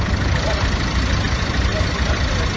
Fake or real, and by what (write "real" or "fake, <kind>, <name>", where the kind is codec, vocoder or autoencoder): real